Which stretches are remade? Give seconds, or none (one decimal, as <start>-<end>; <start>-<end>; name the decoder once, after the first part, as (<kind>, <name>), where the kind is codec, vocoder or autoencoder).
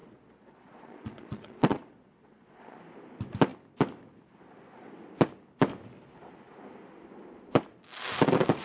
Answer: 0.0-2.8 (vocoder, Vocos)